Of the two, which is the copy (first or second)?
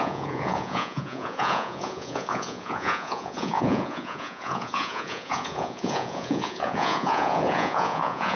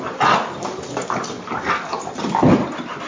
first